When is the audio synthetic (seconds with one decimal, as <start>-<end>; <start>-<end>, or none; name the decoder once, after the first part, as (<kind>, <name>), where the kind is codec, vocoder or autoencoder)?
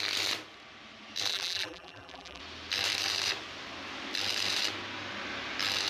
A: 1.3-2.4 (vocoder, BigVGAN v2)